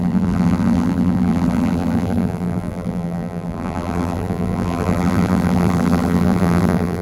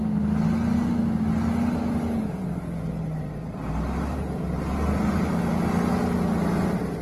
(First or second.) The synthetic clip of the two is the first